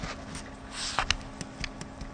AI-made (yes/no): no